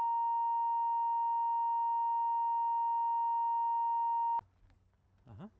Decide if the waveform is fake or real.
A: real